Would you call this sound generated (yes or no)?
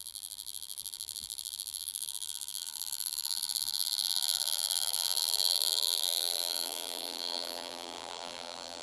yes